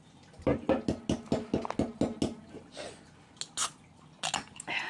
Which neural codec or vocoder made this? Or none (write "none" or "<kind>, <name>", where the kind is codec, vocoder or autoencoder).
none